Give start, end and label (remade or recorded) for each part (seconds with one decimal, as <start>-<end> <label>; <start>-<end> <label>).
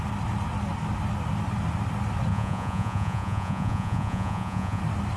0.0-2.3 recorded; 2.3-4.8 remade; 4.8-5.2 recorded